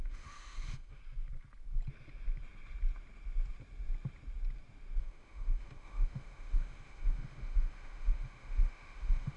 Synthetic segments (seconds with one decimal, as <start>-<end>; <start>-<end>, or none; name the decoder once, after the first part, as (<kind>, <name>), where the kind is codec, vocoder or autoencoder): 0.0-1.0 (autoencoder, DAC-VAE); 5.0-9.4